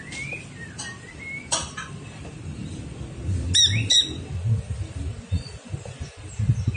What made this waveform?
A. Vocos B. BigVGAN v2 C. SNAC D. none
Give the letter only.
D